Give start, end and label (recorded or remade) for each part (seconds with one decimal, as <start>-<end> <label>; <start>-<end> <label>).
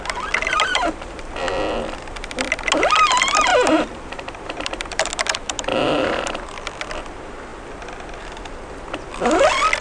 0.0-0.7 recorded; 0.7-1.4 remade; 1.4-3.5 recorded; 3.5-5.1 remade; 5.1-5.7 recorded; 5.7-6.4 remade; 6.4-9.8 recorded